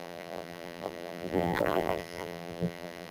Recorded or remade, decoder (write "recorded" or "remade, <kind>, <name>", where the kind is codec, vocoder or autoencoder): remade, vocoder, BigVGAN v2